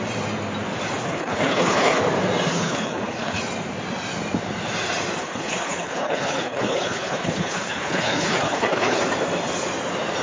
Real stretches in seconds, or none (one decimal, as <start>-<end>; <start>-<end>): 0.0-1.0; 2.0-2.5; 3.4-5.2; 9.0-10.2